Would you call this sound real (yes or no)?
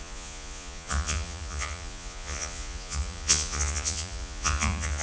no